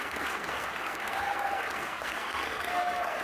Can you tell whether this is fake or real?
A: fake